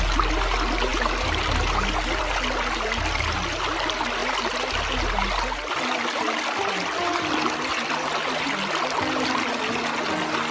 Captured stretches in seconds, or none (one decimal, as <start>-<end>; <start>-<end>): 0.0-10.5